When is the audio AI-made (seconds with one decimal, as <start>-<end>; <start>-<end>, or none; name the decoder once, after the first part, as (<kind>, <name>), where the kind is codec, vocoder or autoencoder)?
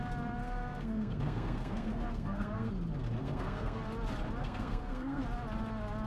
0.4-2.7 (codec, SNAC); 3.2-3.8; 4.4-5.2